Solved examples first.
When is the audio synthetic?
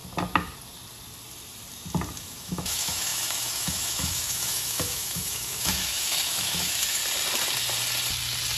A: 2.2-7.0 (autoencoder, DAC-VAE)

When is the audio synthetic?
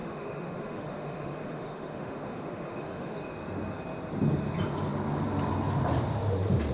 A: 0.0-3.3 (autoencoder, DAC-VAE)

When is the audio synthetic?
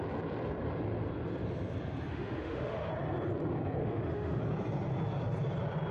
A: 2.1-2.9 (autoencoder, DAC-VAE); 3.8-4.4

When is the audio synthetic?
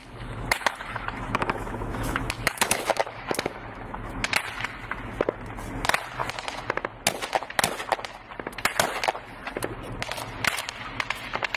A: 0.0-4.3 (autoencoder, DAC-VAE)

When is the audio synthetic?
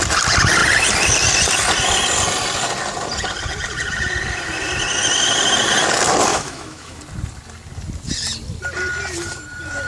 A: 6.3-7.0 (autoencoder, DAC-VAE)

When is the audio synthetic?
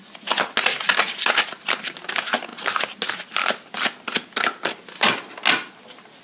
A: none